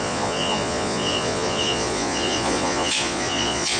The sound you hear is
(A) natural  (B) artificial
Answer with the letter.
B